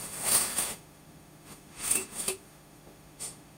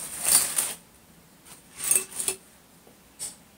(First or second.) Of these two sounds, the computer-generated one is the first